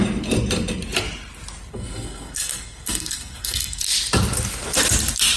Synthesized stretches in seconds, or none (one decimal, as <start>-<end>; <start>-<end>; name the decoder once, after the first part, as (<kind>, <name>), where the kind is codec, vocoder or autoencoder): 1.7-3.8 (codec, SNAC)